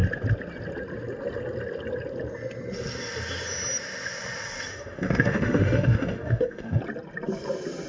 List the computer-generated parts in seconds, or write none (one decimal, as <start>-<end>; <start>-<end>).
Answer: 4.7-6.8